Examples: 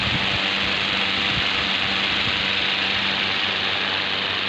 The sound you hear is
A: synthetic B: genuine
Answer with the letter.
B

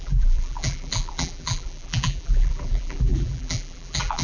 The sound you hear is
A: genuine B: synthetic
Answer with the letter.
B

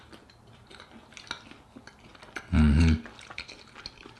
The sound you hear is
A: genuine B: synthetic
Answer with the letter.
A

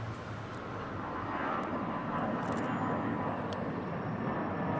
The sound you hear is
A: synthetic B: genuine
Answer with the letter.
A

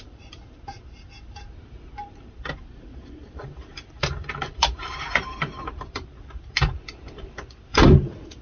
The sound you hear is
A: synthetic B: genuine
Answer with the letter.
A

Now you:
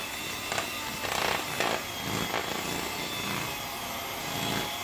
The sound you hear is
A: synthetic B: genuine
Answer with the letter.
B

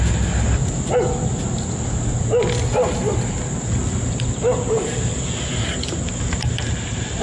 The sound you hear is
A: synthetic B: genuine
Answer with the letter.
B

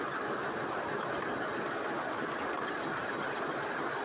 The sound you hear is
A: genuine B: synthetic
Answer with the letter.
B